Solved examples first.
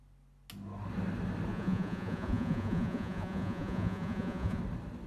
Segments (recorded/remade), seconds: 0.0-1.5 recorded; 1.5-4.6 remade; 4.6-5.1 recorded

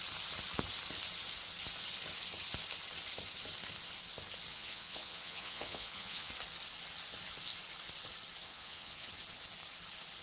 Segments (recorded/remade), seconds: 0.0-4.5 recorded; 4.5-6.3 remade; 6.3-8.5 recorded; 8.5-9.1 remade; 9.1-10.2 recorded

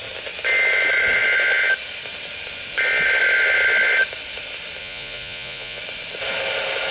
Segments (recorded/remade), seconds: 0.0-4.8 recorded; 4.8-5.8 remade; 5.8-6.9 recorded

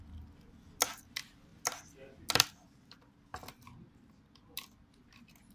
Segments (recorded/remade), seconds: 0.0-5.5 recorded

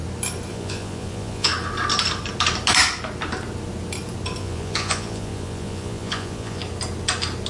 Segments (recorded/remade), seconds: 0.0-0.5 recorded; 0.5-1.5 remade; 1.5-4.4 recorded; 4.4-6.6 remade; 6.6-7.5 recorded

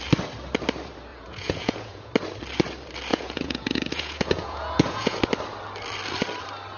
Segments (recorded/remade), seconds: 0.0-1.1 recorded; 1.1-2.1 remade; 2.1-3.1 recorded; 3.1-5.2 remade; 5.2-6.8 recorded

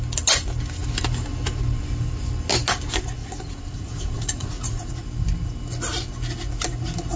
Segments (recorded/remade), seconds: 0.0-3.2 recorded; 3.2-4.9 remade; 4.9-7.2 recorded